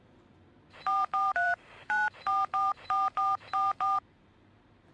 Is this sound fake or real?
fake